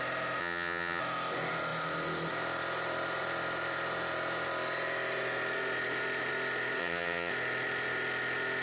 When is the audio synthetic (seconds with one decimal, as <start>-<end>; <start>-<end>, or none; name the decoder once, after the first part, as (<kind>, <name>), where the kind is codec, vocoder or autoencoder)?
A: 0.4-1.0 (vocoder, HiFi-GAN); 6.8-7.3